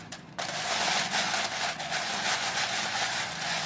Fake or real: fake